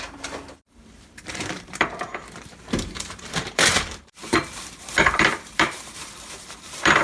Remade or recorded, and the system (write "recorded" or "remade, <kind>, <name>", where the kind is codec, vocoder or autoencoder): remade, vocoder, BigVGAN v2